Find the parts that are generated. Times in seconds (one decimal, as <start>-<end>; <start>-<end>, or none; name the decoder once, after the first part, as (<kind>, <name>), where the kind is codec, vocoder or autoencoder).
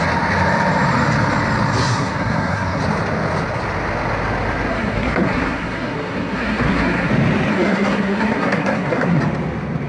1.8-2.8 (codec, SNAC); 4.7-7.1; 7.5-9.2